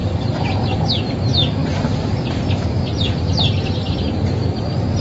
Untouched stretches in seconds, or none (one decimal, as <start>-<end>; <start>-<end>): 0.0-1.6; 4.6-5.0